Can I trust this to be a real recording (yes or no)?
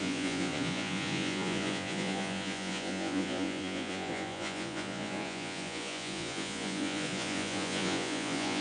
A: no